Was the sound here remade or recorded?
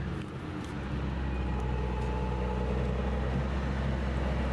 recorded